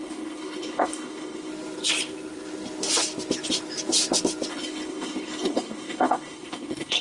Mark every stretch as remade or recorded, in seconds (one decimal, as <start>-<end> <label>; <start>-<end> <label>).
0.0-1.5 remade; 1.5-4.5 recorded; 4.5-7.0 remade